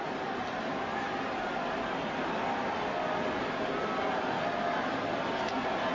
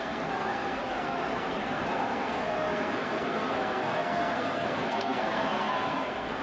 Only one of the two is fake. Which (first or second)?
second